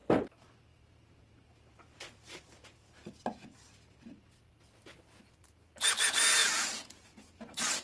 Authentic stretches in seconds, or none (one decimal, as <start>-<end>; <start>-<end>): 0.0-6.4; 7.3-7.8